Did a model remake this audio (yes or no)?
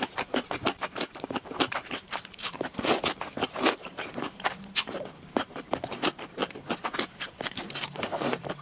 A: yes